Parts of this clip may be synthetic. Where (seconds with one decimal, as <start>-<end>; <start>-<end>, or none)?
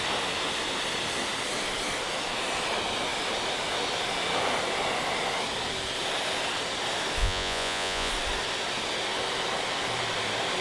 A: 7.2-8.1